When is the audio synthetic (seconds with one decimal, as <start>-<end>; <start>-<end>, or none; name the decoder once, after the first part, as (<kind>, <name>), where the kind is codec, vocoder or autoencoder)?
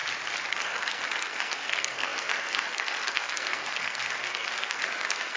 0.5-5.4 (codec, SNAC)